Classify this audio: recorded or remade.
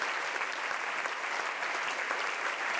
recorded